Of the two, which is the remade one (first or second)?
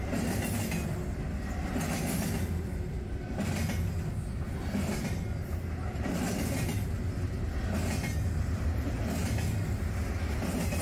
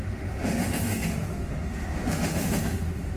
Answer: second